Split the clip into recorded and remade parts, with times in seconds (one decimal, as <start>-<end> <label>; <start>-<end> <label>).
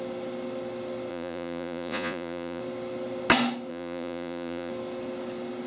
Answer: 0.0-1.1 recorded; 1.1-2.6 remade; 2.6-3.7 recorded; 3.7-4.7 remade; 4.7-5.7 recorded